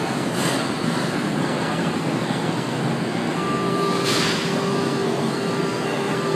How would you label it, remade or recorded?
remade